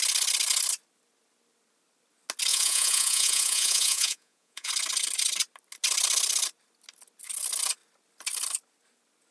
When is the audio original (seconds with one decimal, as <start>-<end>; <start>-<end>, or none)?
0.0-2.5; 4.7-9.3

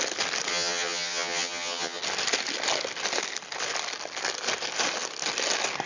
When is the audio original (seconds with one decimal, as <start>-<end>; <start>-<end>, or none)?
0.0-0.5; 2.0-5.9

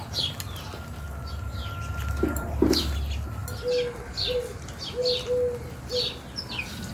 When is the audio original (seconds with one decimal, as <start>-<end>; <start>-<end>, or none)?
0.0-1.9; 2.8-6.9